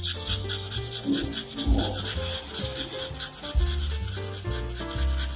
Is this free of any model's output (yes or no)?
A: yes